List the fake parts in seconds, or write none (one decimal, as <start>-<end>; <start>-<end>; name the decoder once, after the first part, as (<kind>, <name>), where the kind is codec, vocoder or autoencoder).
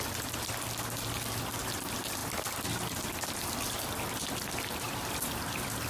none